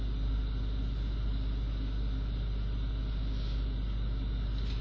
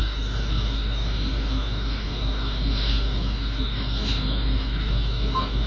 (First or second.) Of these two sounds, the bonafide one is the first